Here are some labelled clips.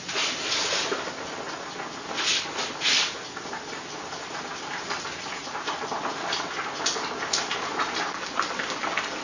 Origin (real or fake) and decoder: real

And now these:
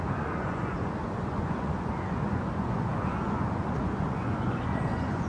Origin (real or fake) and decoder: fake, vocoder, Vocos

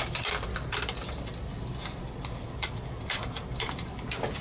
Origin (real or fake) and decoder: real